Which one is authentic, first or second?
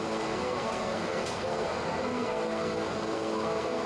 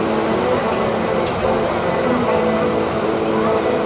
second